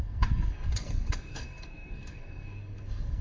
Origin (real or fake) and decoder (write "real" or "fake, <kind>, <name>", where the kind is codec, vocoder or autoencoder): fake, codec, SNAC